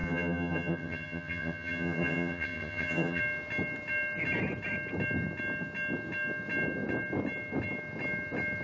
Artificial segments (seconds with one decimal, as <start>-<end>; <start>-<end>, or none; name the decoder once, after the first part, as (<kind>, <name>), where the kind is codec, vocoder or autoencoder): 0.0-3.2 (vocoder, HiFi-GAN)